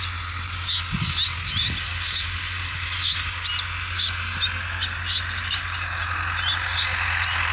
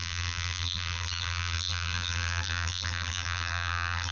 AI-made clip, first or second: second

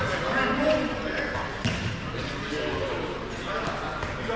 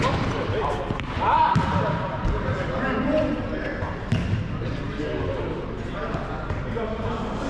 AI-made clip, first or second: second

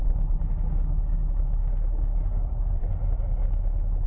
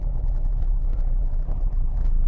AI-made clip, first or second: second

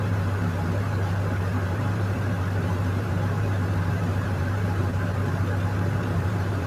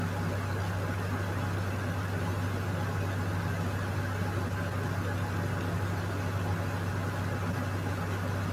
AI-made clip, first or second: first